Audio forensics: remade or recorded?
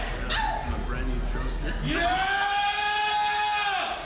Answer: recorded